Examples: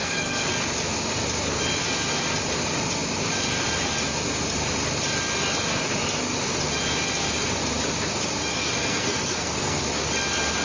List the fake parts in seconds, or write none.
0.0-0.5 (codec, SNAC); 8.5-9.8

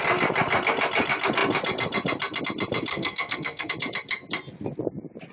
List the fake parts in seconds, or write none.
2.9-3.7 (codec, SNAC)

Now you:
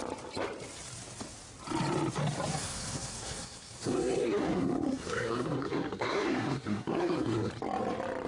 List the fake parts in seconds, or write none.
2.5-7.5 (codec, SNAC)

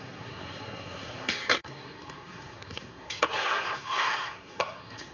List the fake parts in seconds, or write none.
0.0-5.1 (codec, SNAC)

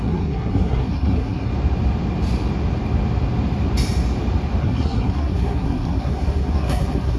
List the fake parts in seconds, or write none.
0.0-1.5 (codec, SNAC); 4.6-7.2

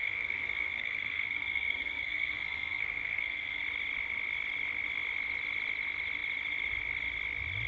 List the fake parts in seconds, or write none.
0.0-3.6 (codec, SNAC)